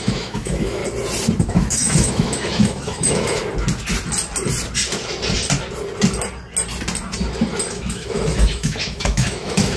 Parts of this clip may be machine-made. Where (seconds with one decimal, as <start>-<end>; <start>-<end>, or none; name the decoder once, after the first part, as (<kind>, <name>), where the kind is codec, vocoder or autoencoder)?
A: 0.0-0.8 (autoencoder, DAC-VAE); 1.4-3.4; 7.7-9.8